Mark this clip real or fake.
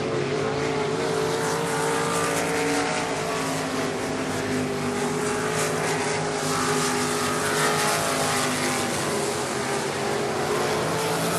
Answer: real